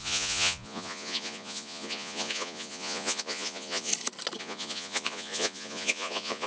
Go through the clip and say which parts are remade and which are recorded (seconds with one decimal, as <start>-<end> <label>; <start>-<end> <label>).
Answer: 0.0-3.9 remade; 3.9-4.4 recorded; 4.4-6.5 remade